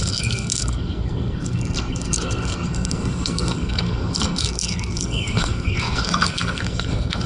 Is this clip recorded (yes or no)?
no